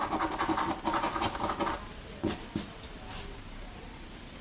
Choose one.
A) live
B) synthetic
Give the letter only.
A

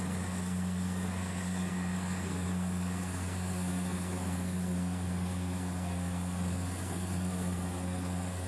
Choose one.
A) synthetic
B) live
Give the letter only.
A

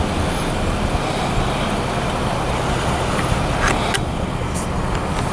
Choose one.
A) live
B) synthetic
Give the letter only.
A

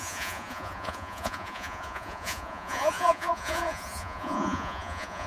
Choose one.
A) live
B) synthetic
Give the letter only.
B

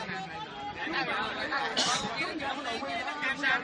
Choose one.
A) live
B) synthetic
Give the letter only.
A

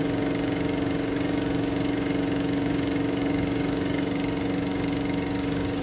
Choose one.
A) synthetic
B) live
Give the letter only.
A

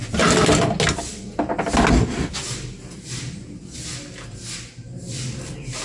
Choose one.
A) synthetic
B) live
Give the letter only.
B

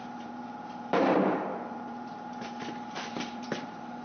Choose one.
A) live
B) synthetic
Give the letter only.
B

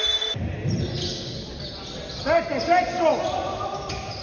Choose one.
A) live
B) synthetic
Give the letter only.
A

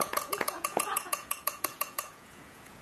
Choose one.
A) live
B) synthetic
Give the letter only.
B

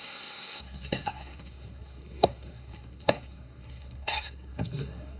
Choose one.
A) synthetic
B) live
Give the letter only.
A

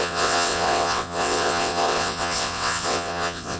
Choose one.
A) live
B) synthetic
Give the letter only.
B